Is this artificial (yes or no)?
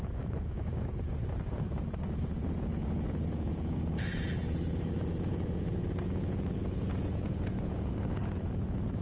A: yes